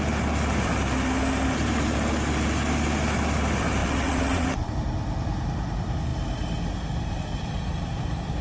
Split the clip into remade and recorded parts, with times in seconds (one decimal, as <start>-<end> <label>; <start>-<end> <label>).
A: 0.0-3.8 recorded; 3.8-4.7 remade; 4.7-8.4 recorded